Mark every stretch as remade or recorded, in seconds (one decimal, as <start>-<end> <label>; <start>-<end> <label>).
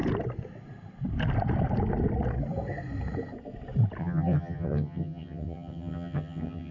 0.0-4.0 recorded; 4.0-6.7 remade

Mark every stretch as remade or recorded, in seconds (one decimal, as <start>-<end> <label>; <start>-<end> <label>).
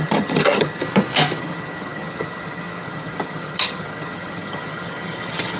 0.0-0.8 remade; 0.8-1.4 recorded; 1.4-5.6 remade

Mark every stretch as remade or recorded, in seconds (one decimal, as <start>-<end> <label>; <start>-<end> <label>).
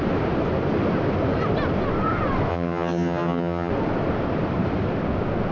0.0-2.5 recorded; 2.5-3.7 remade; 3.7-5.5 recorded